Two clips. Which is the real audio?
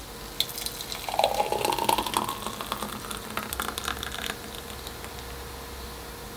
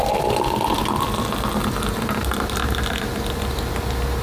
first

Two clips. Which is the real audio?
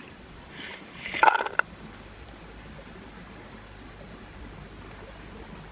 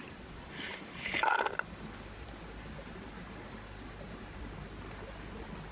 second